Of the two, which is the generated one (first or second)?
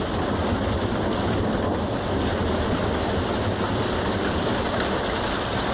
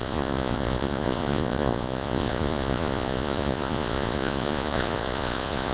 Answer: second